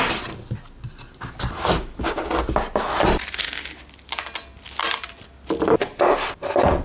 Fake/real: real